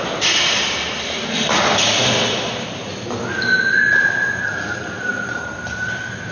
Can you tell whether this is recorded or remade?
recorded